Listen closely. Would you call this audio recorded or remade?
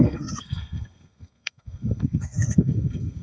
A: remade